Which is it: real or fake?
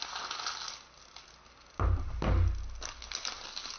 real